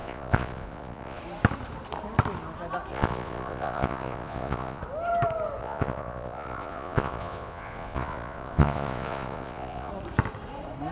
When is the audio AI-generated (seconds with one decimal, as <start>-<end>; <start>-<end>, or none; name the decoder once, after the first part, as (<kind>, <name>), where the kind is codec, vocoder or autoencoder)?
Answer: 0.0-1.2 (vocoder, Vocos); 2.9-4.8; 5.6-9.9